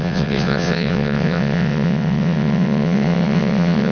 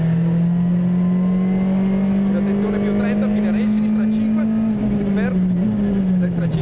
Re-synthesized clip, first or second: first